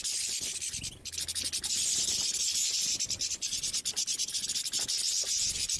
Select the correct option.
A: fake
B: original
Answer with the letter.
B